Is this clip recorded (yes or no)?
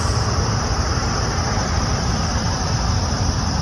no